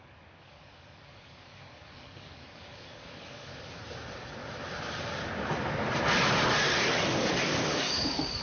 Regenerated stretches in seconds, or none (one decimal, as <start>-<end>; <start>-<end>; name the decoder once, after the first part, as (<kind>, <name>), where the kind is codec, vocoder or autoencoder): 0.0-3.5 (codec, DAC); 7.2-8.4